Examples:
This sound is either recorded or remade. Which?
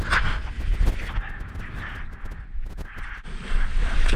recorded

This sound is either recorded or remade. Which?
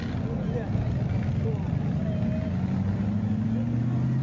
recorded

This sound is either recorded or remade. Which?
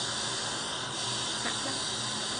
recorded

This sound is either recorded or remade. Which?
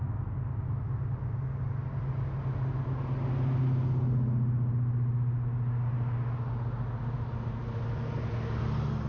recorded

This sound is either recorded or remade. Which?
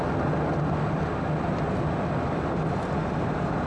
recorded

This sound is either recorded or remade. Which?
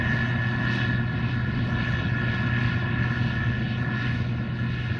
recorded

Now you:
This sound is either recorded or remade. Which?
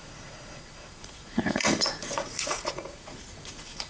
remade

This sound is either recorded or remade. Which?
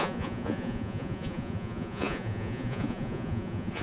remade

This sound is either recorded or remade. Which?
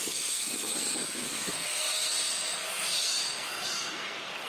remade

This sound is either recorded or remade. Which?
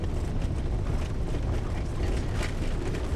recorded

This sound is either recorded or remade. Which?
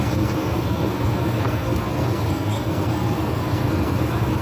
remade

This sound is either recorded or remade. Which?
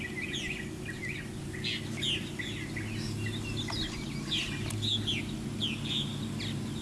recorded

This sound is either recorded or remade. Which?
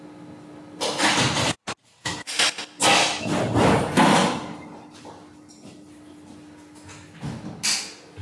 recorded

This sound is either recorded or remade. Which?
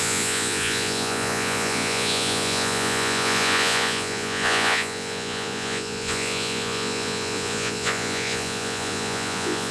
remade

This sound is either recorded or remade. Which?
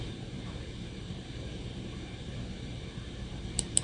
remade